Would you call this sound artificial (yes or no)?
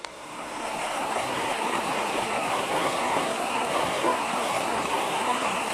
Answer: yes